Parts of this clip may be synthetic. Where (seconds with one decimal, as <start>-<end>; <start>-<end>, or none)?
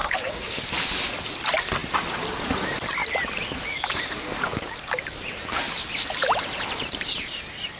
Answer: 0.0-0.7